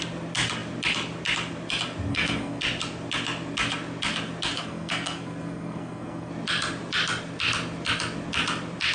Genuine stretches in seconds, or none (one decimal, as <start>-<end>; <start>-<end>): 0.0-2.1; 2.6-4.5; 6.3-8.9